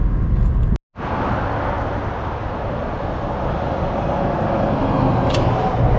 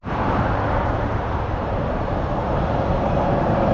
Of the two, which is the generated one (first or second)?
second